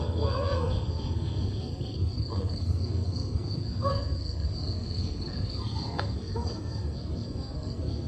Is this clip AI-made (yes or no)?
yes